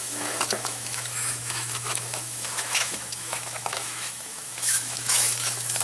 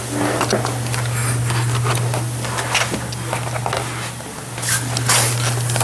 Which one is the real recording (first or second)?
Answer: second